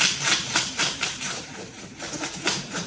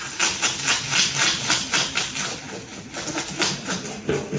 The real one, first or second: second